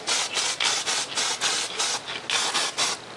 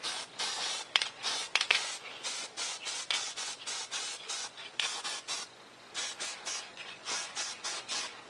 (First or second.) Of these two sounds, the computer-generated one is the second